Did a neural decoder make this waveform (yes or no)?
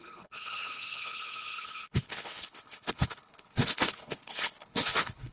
yes